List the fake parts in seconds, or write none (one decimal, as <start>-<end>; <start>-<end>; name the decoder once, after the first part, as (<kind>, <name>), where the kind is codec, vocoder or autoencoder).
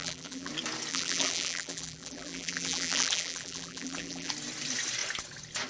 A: 0.0-0.5 (vocoder, BigVGAN v2); 0.9-4.3